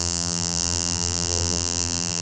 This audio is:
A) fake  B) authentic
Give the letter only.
A